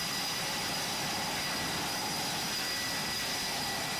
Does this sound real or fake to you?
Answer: real